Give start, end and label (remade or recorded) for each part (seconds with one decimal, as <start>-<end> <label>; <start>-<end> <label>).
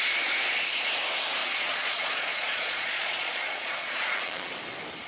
0.0-1.4 recorded; 1.4-4.5 remade; 4.5-5.1 recorded